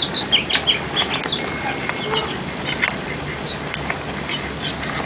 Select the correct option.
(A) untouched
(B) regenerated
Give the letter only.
A